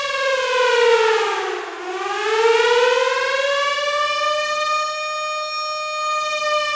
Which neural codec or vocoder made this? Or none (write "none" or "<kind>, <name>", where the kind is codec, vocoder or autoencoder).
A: none